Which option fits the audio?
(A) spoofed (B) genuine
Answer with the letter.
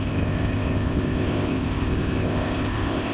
A